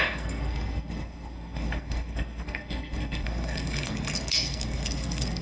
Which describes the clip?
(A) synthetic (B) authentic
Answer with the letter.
A